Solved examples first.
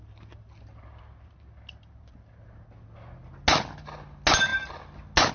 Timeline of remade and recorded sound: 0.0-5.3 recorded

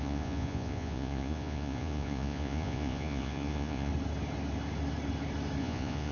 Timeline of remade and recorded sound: 0.0-3.9 remade; 3.9-5.6 recorded; 5.6-6.1 remade

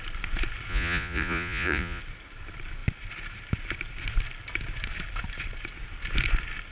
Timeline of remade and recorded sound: 0.0-0.7 recorded; 0.7-2.0 remade; 2.0-6.7 recorded

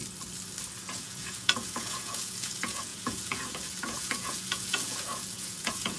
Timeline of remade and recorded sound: 0.0-0.8 recorded; 0.8-6.0 remade

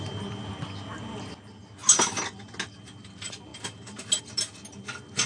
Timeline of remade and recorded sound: 0.0-5.3 recorded

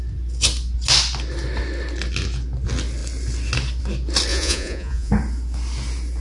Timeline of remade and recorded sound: 0.0-4.3 recorded; 4.3-5.1 remade; 5.1-6.2 recorded